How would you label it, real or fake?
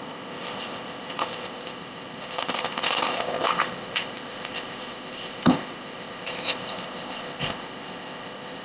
fake